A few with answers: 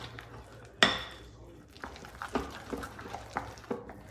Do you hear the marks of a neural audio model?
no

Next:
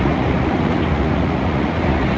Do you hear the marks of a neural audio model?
yes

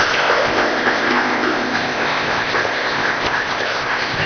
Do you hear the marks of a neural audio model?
yes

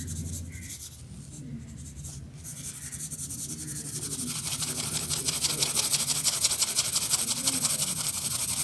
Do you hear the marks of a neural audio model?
no